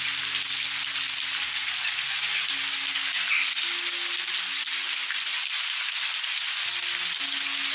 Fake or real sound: real